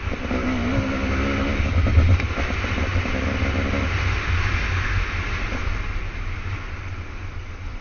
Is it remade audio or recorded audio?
recorded